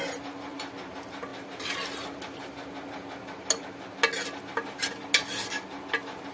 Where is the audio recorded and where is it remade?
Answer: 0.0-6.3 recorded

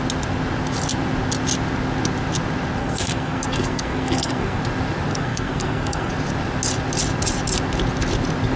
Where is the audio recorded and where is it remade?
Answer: 0.0-2.8 recorded; 2.8-4.6 remade; 4.6-5.1 recorded; 5.1-6.1 remade; 6.1-8.6 recorded

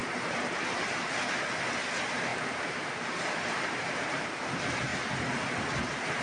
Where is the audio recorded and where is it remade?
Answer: 0.0-0.6 remade; 0.6-2.3 recorded; 2.3-4.4 remade; 4.4-6.2 recorded

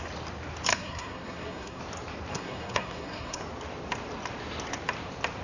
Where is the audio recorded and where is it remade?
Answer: 0.0-0.7 recorded; 0.7-1.8 remade; 1.8-2.3 recorded; 2.3-3.4 remade; 3.4-5.4 recorded

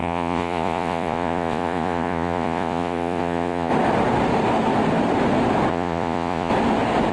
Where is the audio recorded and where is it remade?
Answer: 0.0-3.7 remade; 3.7-5.7 recorded; 5.7-6.5 remade; 6.5-7.1 recorded

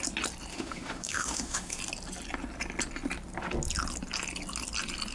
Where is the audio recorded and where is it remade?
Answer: 0.0-0.5 recorded; 0.5-1.8 remade; 1.8-5.1 recorded